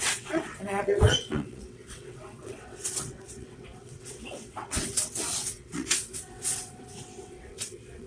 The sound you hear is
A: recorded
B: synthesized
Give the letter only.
B